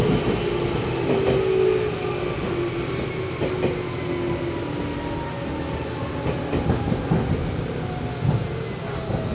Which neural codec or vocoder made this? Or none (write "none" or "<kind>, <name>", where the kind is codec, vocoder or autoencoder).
none